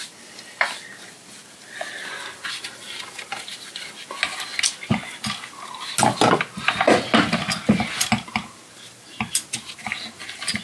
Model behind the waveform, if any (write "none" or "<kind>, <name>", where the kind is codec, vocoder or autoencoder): none